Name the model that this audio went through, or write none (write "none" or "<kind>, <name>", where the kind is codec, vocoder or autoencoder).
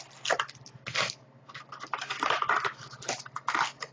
none